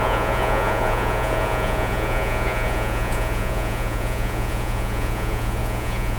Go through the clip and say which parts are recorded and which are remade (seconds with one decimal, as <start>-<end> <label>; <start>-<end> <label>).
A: 0.0-6.2 remade